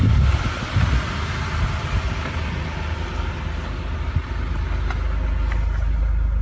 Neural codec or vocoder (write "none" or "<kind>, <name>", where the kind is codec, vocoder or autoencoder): none